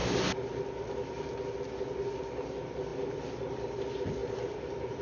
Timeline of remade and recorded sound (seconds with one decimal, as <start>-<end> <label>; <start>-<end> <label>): 0.0-5.0 recorded